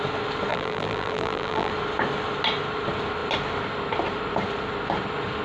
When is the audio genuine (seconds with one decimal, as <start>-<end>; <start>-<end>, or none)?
0.0-0.5; 1.7-5.4